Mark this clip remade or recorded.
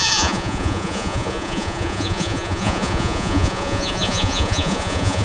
remade